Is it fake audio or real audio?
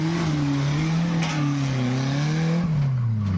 real